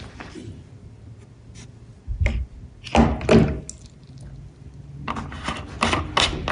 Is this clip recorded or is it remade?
recorded